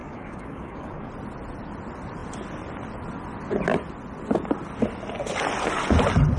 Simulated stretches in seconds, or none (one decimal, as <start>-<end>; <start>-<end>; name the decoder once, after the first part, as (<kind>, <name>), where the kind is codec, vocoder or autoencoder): 0.0-1.1 (codec, DAC)